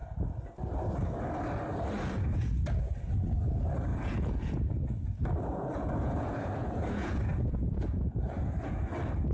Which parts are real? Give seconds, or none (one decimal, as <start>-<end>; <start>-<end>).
0.0-3.9; 4.5-5.5; 8.9-9.3